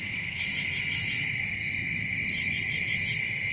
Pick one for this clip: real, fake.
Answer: real